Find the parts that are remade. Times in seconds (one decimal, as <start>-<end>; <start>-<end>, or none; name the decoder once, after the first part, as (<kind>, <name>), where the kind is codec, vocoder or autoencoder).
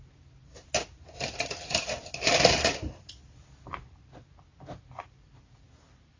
0.0-6.2 (vocoder, BigVGAN v2)